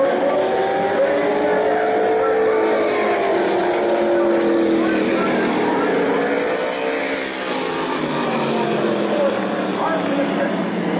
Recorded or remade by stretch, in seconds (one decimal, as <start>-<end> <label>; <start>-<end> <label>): 0.0-11.0 recorded